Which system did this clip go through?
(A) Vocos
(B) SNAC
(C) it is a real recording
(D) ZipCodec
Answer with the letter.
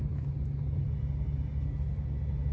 C